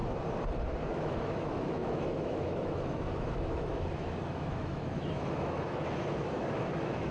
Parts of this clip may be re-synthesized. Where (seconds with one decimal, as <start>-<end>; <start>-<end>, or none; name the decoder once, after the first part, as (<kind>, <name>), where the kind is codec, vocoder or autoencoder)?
0.8-7.1 (autoencoder, DAC-VAE)

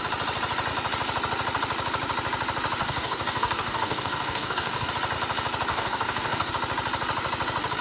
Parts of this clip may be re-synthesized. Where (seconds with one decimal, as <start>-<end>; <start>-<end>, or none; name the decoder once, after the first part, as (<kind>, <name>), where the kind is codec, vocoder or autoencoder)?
2.8-4.9 (codec, DAC); 5.7-6.5

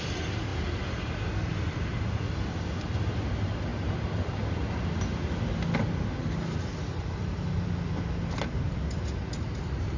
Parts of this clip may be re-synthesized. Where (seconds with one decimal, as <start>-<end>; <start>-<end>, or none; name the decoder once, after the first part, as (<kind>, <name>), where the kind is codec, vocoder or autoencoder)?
none

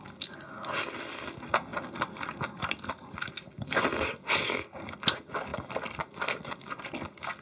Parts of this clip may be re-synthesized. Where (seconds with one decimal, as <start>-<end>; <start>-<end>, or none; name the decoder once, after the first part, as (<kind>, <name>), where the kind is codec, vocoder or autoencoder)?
none

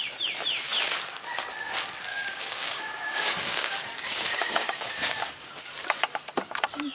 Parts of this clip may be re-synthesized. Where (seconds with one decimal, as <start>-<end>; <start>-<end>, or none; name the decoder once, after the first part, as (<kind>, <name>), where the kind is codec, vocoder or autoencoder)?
2.1-5.6 (codec, DAC)

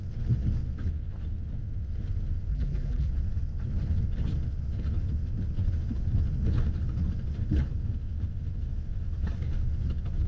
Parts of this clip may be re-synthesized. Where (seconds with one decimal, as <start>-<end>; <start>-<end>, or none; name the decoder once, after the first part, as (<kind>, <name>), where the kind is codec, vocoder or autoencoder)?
2.5-3.1 (vocoder, BigVGAN v2)

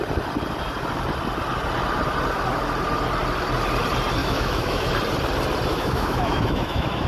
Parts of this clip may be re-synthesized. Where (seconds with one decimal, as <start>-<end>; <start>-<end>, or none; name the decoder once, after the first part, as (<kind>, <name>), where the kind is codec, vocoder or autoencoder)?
4.2-4.9 (autoencoder, DAC-VAE); 5.7-7.1

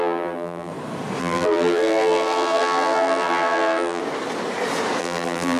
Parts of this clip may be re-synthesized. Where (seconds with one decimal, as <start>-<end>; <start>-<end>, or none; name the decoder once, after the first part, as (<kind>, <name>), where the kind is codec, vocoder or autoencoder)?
0.0-0.7 (vocoder, BigVGAN v2); 1.2-4.0; 5.0-5.6